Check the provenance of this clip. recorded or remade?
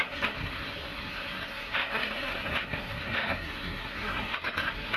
remade